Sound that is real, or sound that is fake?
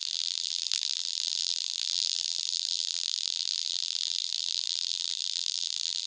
fake